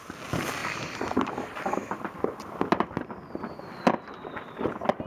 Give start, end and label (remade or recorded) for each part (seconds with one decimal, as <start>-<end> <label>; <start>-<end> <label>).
0.0-5.1 recorded